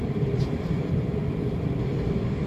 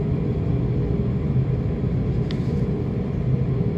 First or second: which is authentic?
second